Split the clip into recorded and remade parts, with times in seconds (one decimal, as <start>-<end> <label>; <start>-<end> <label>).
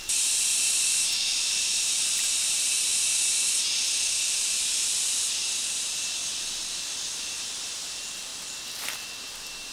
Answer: 0.0-2.9 remade; 2.9-4.4 recorded; 4.4-6.2 remade; 6.2-7.4 recorded; 7.4-8.3 remade; 8.3-9.7 recorded